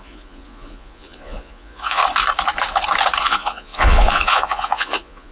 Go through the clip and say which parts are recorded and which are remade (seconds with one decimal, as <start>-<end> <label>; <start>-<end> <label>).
0.0-2.0 remade; 2.0-3.2 recorded; 3.2-5.3 remade